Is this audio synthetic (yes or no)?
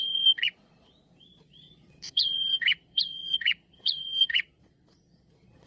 yes